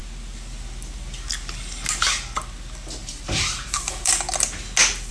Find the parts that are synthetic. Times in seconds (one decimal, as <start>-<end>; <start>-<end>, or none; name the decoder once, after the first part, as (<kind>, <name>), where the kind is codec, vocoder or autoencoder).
3.0-4.1 (vocoder, BigVGAN v2)